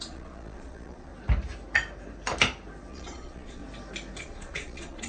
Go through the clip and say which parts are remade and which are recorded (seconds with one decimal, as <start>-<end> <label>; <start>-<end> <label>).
0.0-1.1 remade; 1.1-2.9 recorded; 2.9-3.6 remade; 3.6-4.2 recorded; 4.2-5.1 remade

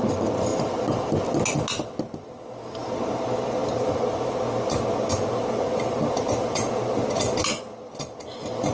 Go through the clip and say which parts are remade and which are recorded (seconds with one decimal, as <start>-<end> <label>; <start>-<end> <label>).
0.0-0.5 recorded; 0.5-1.2 remade; 1.2-8.7 recorded